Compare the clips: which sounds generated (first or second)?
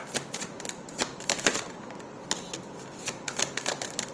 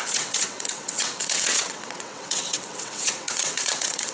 second